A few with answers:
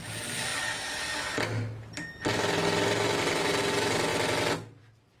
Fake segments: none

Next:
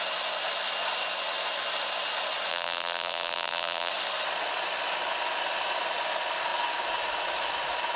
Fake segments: 2.5-3.9

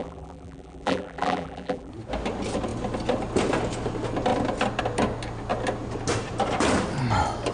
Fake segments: 0.0-1.9

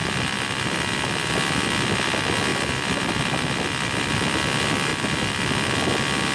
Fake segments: 0.0-1.3; 2.5-4.1; 4.9-5.4